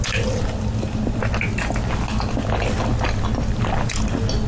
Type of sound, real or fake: real